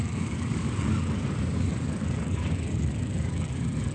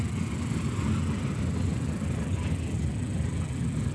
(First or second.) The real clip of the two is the second